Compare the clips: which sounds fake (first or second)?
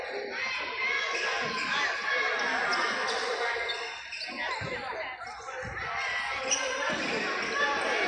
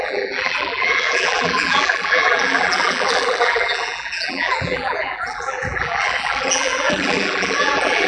second